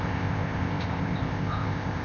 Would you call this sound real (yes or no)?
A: no